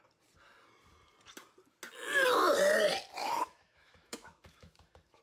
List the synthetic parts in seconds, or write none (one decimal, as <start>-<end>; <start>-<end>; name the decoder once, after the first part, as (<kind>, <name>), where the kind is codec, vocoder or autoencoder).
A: 3.2-5.2 (autoencoder, DAC-VAE)

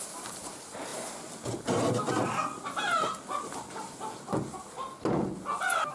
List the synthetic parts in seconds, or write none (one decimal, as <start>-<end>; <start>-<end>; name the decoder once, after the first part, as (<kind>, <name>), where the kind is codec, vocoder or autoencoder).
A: none

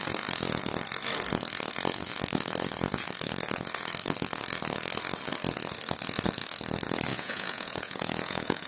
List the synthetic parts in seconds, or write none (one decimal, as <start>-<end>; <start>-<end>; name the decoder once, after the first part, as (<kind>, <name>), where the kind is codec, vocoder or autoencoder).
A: 7.1-8.7 (vocoder, Vocos)

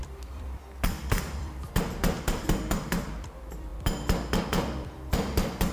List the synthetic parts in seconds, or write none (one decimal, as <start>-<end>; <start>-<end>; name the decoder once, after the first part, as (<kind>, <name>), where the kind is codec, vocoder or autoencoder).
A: 0.0-3.7 (vocoder, BigVGAN v2); 4.4-5.7

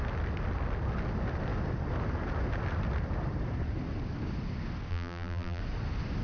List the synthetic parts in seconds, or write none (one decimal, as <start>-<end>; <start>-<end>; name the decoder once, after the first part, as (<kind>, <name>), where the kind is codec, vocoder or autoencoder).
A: 4.9-5.6 (vocoder, BigVGAN v2)